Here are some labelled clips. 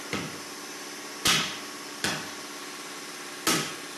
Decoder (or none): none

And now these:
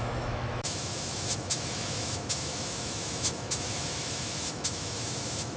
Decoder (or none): autoencoder, DAC-VAE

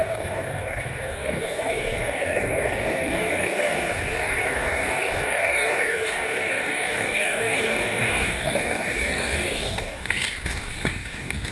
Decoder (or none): codec, DAC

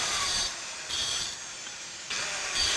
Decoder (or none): vocoder, BigVGAN v2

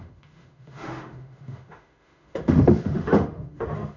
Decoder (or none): autoencoder, DAC-VAE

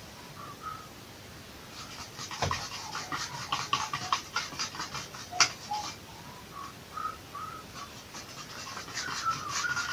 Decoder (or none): none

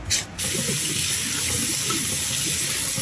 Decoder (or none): none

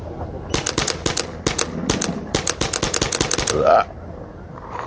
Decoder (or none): none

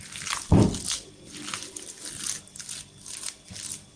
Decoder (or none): none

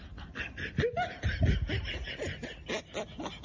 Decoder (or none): none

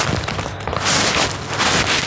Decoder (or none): none